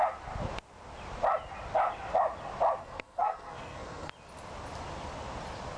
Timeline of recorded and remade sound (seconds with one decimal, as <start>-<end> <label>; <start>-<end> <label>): 0.0-2.8 recorded; 2.8-4.1 remade; 4.1-5.8 recorded